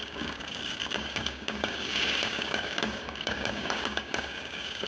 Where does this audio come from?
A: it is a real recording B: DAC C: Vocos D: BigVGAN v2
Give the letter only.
B